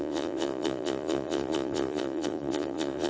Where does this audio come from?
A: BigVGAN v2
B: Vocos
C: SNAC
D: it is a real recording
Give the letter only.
B